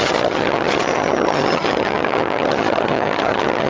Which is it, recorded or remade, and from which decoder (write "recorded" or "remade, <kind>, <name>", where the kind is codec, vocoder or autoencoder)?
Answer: remade, vocoder, HiFi-GAN